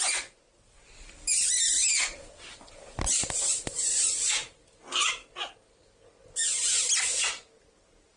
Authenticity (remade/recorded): recorded